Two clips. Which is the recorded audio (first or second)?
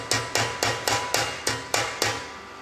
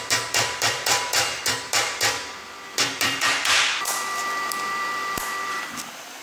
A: first